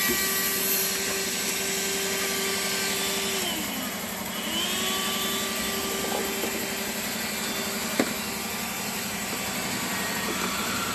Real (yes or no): yes